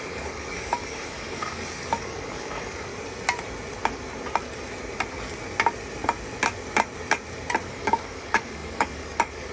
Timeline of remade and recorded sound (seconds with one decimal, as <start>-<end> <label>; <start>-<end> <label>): 0.0-2.9 remade; 2.9-7.7 recorded; 7.7-9.5 remade